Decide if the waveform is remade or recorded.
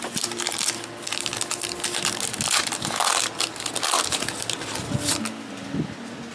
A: recorded